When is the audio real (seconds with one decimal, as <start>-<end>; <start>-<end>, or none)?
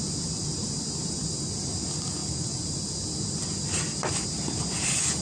0.0-5.2